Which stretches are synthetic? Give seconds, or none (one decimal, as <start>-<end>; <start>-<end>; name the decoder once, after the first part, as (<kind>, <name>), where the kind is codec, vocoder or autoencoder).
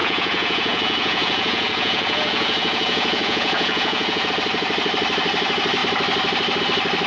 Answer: 0.0-4.3 (vocoder, Vocos)